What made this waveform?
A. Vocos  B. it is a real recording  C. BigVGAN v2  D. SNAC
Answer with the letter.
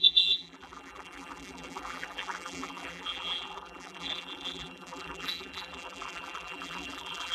C